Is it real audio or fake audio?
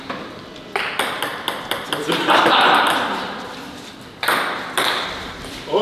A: fake